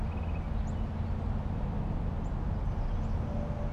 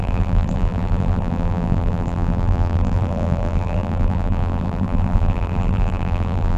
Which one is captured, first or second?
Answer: first